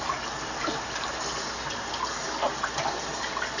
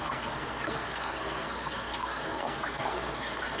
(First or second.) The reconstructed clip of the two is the second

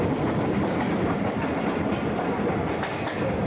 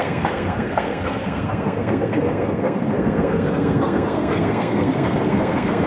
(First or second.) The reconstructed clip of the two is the second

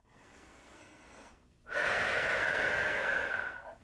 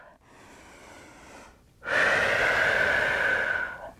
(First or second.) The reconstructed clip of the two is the first